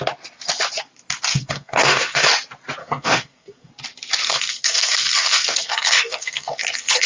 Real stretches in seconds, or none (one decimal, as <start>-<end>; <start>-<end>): 0.0-1.3; 2.3-2.8; 3.7-4.2